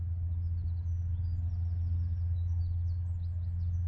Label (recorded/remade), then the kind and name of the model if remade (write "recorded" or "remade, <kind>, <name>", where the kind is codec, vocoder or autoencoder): recorded